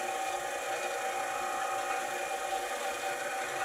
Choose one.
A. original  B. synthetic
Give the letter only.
A